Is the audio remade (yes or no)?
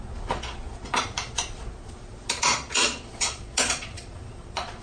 yes